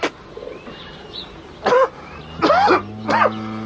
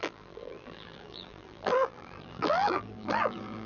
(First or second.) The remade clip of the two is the second